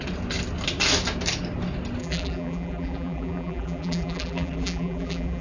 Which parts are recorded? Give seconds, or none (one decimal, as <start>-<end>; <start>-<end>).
0.0-2.0